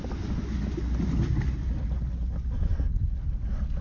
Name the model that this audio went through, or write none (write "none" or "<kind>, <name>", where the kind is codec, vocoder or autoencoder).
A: none